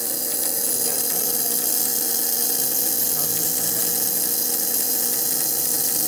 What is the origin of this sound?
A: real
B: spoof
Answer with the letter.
A